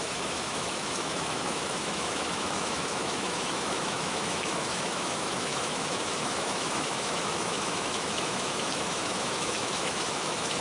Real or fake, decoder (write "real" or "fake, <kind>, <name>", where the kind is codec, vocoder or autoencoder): fake, autoencoder, DAC-VAE